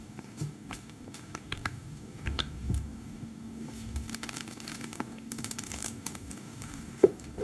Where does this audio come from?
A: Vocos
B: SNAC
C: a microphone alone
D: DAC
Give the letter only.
D